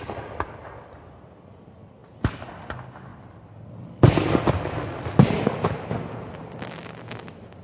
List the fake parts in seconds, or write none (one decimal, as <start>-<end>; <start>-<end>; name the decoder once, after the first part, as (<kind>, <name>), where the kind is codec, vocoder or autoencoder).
none